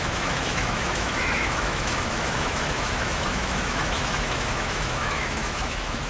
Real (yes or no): no